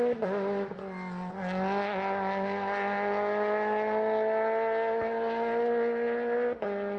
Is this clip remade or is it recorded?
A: recorded